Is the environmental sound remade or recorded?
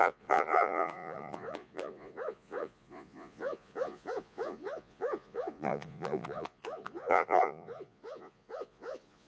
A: remade